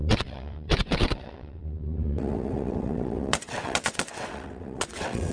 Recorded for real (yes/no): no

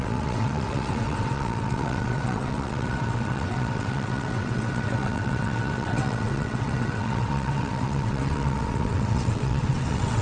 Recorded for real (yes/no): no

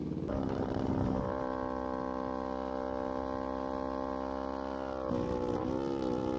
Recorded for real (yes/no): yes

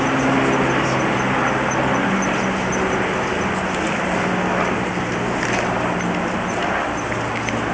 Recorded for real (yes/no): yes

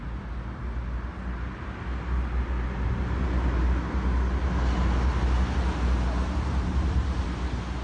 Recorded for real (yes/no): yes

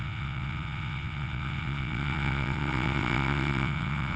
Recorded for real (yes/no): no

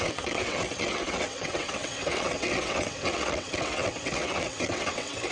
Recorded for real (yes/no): no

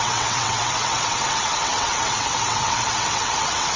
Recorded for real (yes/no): no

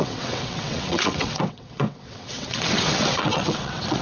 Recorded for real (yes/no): no